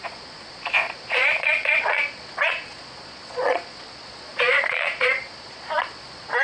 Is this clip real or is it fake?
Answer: fake